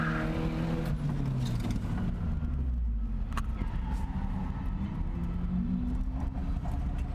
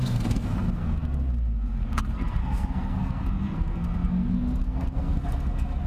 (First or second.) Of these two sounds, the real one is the first